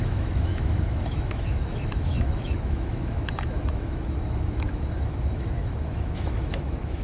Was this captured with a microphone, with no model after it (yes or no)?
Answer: no